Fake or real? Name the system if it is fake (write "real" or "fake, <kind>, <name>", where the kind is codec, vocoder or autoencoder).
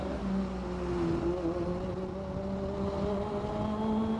real